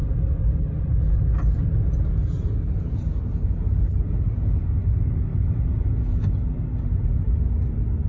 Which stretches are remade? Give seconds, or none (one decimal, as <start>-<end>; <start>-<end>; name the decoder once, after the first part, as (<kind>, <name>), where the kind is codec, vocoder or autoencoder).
none